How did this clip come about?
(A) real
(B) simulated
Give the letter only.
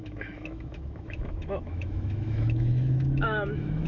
B